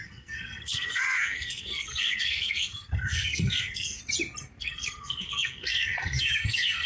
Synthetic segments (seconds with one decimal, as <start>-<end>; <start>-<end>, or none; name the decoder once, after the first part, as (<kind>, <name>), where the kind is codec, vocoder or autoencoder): 0.0-4.0 (codec, SNAC); 4.6-6.9